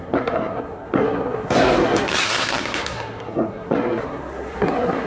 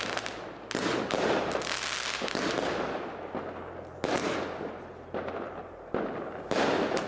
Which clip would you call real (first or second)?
second